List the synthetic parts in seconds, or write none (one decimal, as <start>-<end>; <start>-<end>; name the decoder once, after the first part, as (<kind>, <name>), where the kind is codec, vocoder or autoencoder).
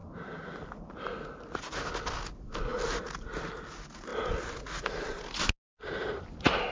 none